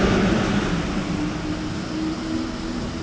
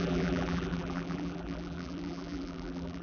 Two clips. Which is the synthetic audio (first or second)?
second